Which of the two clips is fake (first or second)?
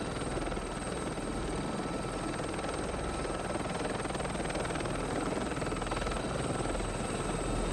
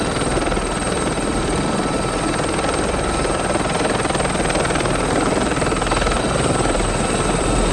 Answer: second